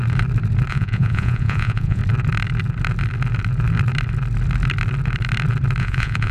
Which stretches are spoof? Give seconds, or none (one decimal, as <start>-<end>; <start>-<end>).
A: 0.7-2.0; 5.8-6.3